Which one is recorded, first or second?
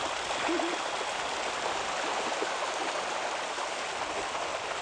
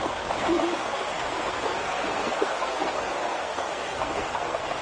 first